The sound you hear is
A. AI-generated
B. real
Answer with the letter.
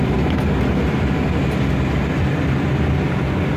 B